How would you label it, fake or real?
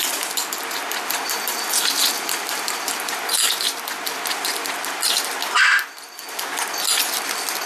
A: real